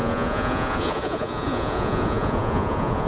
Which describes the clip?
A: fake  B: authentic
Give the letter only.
A